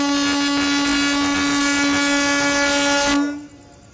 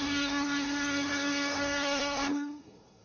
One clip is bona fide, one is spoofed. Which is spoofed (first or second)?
second